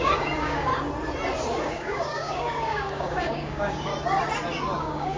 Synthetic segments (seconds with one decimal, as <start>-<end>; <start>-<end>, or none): 0.0-0.7; 1.6-3.9; 4.8-5.2